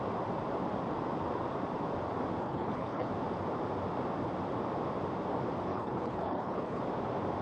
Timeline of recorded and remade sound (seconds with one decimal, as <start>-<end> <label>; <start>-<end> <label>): 0.0-2.4 recorded; 2.4-3.1 remade; 3.1-5.7 recorded; 5.7-6.8 remade; 6.8-7.4 recorded

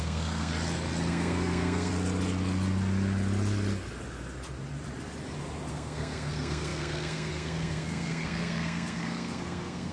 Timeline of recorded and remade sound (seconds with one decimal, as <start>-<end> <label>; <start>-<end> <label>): 0.0-0.5 remade; 0.5-1.1 recorded; 1.1-1.9 remade; 1.9-5.7 recorded; 5.7-9.9 remade

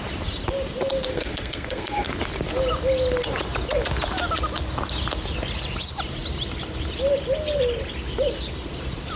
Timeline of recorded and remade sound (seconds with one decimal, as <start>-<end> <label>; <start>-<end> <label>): 0.0-1.1 recorded; 1.1-2.1 remade; 2.1-9.2 recorded

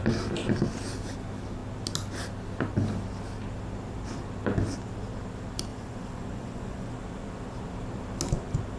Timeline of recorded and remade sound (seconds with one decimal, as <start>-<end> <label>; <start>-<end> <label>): 0.0-5.7 recorded; 5.7-6.9 remade; 6.9-8.8 recorded

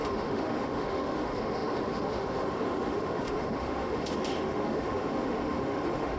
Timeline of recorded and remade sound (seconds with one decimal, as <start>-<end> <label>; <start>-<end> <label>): 0.0-6.2 remade